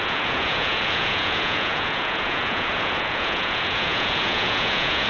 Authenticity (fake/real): fake